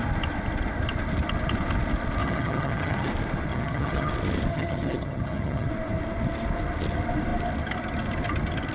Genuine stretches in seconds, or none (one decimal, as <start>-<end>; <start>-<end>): 0.0-2.2; 3.1-3.5; 4.1-4.5; 5.7-8.7